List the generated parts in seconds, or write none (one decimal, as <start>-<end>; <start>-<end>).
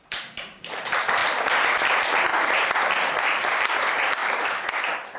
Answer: 0.0-1.2; 1.9-2.3; 3.2-4.2